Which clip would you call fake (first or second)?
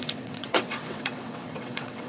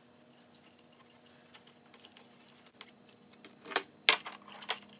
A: first